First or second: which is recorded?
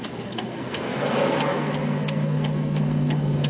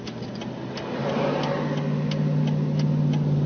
second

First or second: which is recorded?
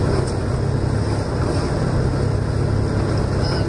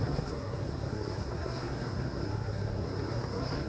first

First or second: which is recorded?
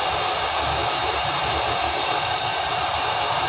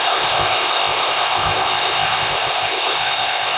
first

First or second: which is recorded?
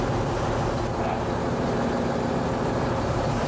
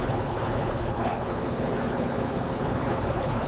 first